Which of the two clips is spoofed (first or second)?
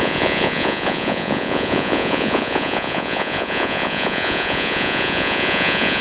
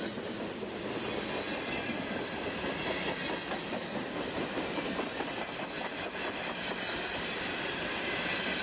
first